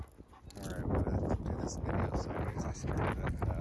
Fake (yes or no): no